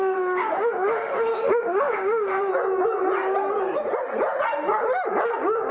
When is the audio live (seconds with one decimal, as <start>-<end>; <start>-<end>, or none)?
2.5-5.7